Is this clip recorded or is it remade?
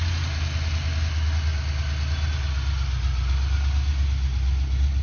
recorded